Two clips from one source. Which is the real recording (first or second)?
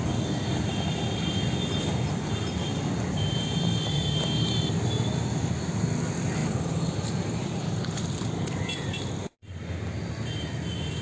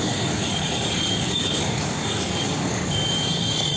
first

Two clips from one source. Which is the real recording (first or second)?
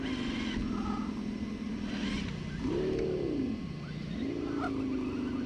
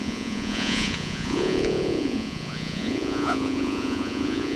first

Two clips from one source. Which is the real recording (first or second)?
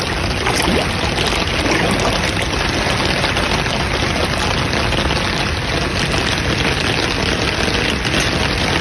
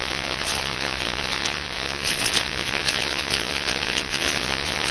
first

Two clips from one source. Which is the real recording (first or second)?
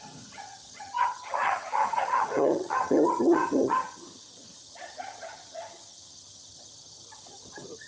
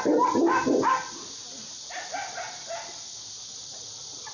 second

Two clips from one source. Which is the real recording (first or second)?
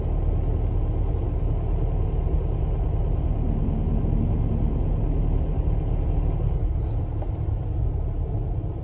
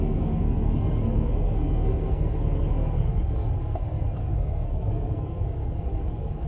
first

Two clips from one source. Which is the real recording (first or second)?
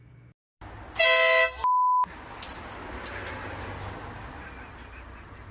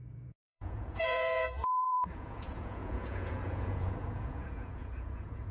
first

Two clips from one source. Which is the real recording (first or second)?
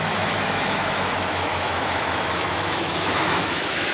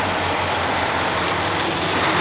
second